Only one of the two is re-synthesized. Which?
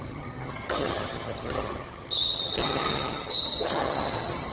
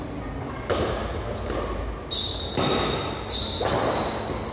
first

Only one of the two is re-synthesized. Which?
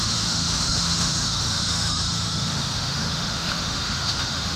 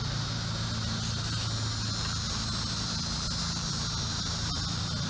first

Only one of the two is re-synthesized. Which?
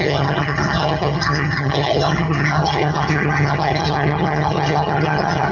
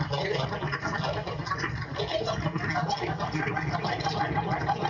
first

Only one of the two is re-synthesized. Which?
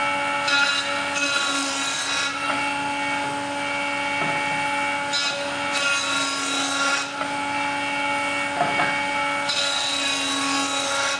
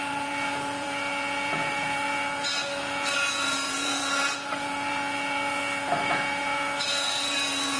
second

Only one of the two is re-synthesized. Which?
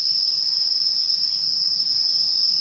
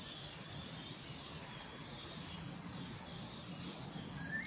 first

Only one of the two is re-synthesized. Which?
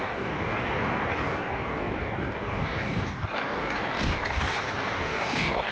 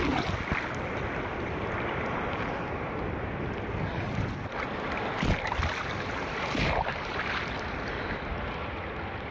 first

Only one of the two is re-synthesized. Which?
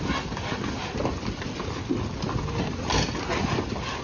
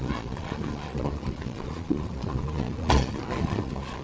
second